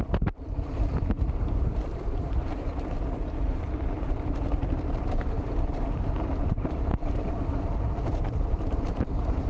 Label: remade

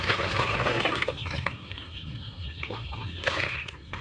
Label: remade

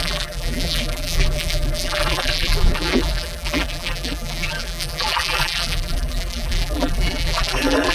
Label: remade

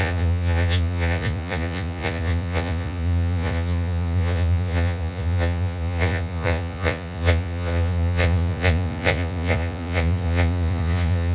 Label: remade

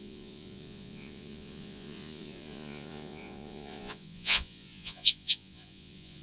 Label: remade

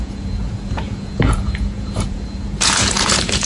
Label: remade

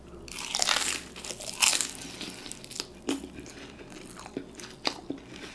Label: recorded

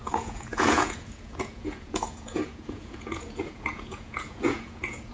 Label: remade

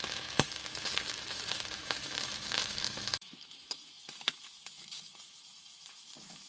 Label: remade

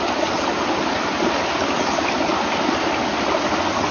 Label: recorded